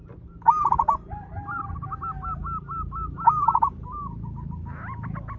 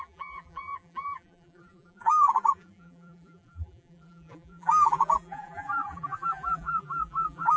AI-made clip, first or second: second